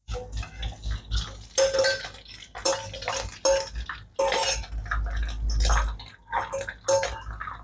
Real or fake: real